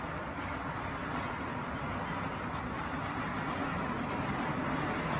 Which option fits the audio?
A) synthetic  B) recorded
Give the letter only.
B